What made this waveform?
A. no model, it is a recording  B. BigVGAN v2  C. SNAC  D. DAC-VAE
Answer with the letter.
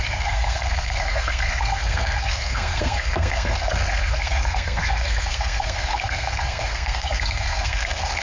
C